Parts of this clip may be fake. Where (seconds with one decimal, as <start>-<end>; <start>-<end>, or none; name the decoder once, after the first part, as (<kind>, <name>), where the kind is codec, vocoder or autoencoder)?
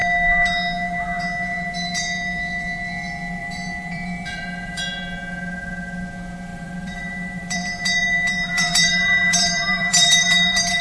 3.4-4.8 (vocoder, BigVGAN v2); 6.5-10.8